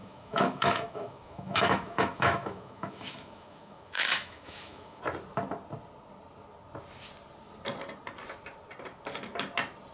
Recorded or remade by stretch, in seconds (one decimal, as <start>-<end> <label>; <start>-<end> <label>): 0.0-5.0 remade; 5.0-9.9 recorded